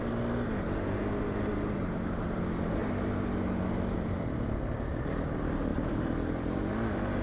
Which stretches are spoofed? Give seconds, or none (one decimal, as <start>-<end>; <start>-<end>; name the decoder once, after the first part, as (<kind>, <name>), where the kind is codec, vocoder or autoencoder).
5.7-6.6 (vocoder, BigVGAN v2)